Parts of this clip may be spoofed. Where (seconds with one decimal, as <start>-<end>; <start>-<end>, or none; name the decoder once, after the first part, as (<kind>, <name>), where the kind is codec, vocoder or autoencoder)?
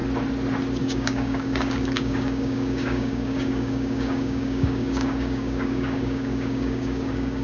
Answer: 0.8-7.4 (codec, DAC)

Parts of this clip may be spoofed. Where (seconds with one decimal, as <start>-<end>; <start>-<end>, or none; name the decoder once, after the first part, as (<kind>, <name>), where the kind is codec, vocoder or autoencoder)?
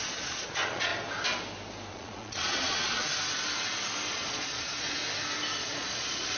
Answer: 0.0-0.9 (vocoder, Vocos); 1.9-3.0; 4.1-5.0; 5.6-6.4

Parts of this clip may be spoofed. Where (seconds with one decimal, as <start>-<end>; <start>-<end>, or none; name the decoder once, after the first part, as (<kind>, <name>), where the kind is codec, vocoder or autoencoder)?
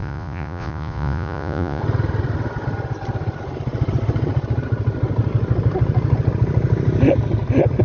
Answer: 0.0-1.8 (vocoder, Vocos)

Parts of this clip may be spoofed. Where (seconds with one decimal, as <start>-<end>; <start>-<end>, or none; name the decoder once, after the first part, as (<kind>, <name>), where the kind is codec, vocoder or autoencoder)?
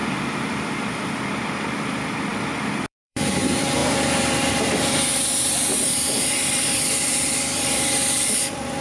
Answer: 0.0-8.8 (vocoder, BigVGAN v2)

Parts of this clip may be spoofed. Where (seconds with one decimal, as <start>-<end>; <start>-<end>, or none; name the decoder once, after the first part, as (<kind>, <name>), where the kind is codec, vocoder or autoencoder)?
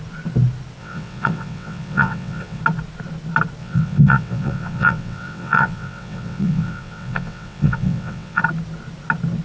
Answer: 0.8-2.6 (vocoder, WaveNeXt); 3.6-8.4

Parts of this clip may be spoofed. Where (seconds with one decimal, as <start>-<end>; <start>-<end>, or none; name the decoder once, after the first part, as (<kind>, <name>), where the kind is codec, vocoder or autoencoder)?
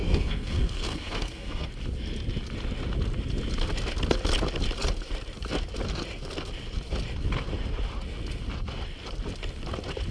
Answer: 0.0-1.7 (codec, SNAC)